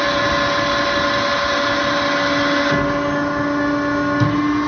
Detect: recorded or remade recorded